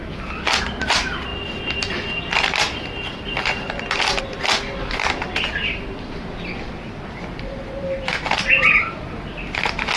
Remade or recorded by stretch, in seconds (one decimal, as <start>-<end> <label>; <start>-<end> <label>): 0.0-10.0 recorded